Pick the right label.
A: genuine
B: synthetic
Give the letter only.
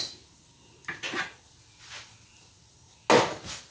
A